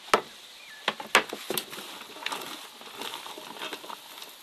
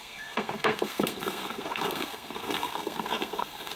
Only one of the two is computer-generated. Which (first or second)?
second